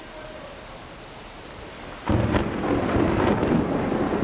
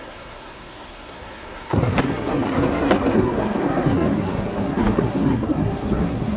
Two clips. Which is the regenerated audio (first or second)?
second